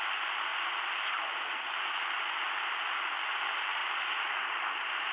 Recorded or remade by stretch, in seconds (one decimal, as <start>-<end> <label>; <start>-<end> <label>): 0.0-5.1 recorded